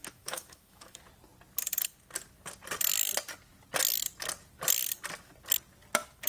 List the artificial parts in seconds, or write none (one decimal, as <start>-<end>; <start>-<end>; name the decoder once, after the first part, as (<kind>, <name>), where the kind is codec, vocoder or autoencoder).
0.0-1.0 (autoencoder, DAC-VAE)